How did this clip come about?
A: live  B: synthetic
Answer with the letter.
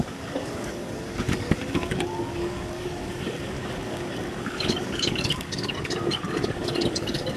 B